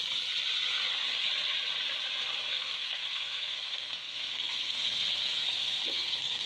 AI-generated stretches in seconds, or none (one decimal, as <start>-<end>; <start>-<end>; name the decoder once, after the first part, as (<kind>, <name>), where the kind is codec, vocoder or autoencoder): 2.5-6.5 (codec, SNAC)